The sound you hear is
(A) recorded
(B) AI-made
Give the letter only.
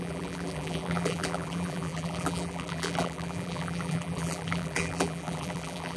B